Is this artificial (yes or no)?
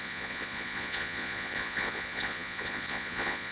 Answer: yes